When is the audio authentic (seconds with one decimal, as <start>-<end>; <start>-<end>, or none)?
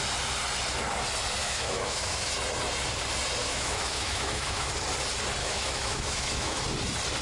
0.0-1.4; 2.3-3.4; 4.7-5.4; 6.6-7.2